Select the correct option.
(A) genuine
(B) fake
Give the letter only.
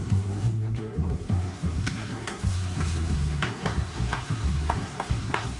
B